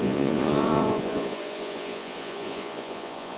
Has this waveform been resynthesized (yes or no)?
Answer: yes